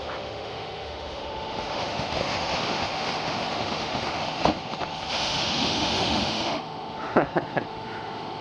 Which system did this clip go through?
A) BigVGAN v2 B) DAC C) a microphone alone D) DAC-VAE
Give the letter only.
D